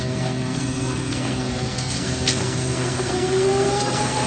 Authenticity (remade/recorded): remade